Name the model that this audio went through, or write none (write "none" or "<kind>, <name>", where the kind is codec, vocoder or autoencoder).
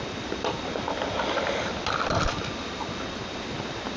vocoder, BigVGAN v2